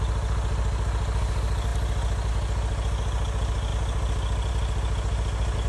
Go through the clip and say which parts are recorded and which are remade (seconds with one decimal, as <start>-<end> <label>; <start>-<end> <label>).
0.0-5.7 recorded